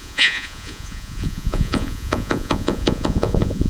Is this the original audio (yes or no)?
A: no